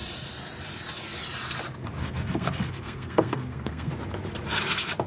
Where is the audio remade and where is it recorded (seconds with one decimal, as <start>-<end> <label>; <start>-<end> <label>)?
0.0-2.0 recorded; 2.0-3.9 remade; 3.9-5.1 recorded

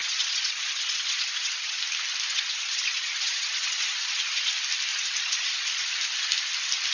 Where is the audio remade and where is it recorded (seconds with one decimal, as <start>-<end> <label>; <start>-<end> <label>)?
0.0-1.8 remade; 1.8-2.3 recorded; 2.3-4.5 remade; 4.5-4.9 recorded; 4.9-5.9 remade; 5.9-6.9 recorded

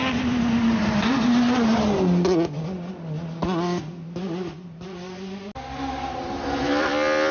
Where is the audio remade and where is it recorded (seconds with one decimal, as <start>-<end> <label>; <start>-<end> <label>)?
0.0-7.3 recorded

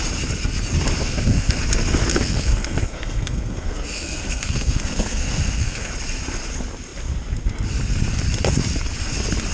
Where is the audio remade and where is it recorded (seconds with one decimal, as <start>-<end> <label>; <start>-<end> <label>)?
0.0-1.0 recorded; 1.0-1.6 remade; 1.6-2.1 recorded; 2.1-5.9 remade; 5.9-9.5 recorded

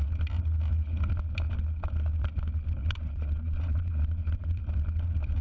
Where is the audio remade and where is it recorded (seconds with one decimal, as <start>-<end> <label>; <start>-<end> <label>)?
0.0-2.8 recorded; 2.8-4.6 remade; 4.6-5.4 recorded